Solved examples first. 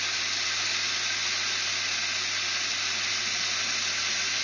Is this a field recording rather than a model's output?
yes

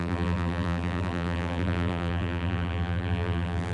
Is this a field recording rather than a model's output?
no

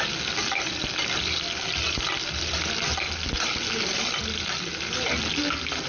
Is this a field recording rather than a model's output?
yes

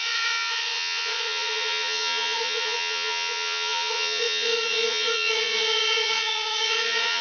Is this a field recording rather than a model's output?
no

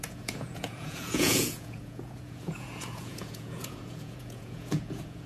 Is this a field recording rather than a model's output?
no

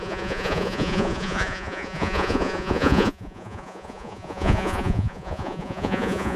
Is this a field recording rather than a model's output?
no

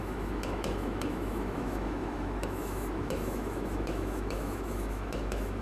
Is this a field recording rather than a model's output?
no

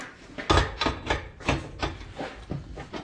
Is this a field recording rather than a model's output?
yes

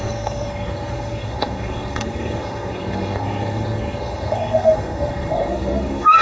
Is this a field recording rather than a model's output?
no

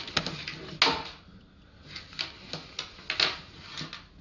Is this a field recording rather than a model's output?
yes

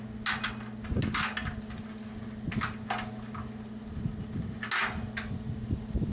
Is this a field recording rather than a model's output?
yes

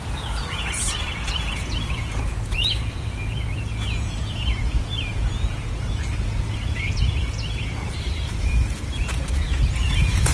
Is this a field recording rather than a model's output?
no